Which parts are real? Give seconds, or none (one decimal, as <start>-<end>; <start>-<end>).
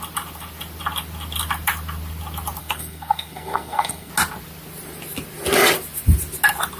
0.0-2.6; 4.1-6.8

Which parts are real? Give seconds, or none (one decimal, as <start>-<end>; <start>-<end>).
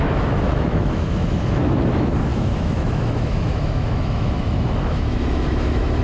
none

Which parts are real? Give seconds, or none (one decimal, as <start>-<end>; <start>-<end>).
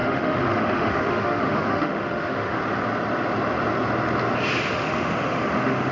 2.6-4.7